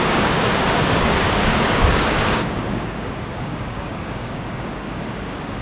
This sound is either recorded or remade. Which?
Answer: remade